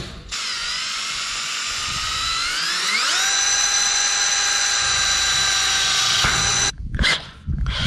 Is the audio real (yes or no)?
no